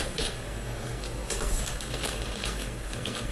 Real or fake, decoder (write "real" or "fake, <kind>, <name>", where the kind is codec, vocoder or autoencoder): fake, codec, SNAC